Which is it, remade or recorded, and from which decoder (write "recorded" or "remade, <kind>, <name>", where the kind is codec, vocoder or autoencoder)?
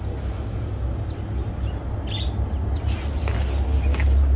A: recorded